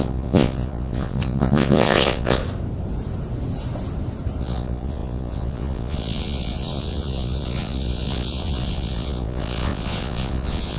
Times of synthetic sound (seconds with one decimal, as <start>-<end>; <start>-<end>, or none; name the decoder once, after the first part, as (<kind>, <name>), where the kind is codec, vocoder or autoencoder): 0.0-2.4 (vocoder, Vocos); 4.4-10.8